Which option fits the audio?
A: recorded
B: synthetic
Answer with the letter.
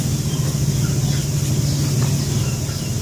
A